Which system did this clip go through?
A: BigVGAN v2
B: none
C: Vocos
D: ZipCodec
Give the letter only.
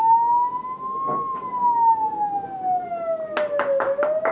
B